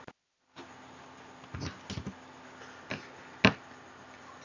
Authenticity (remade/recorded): recorded